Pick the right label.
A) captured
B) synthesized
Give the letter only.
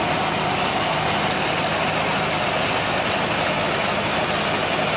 A